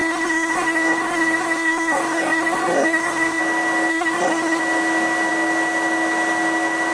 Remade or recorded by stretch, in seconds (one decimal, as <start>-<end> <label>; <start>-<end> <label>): 0.0-3.4 remade; 3.4-3.9 recorded; 3.9-4.6 remade; 4.6-6.9 recorded